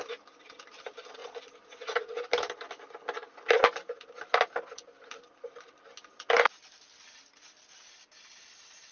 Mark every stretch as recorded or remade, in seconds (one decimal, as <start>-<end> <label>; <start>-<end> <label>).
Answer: 0.0-8.9 recorded